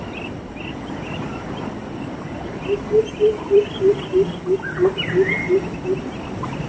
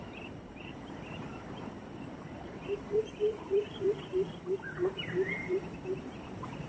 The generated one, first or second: second